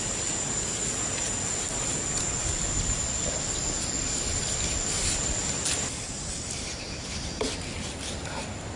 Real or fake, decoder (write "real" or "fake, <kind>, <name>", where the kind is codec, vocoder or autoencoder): real